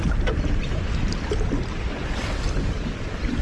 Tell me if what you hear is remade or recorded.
recorded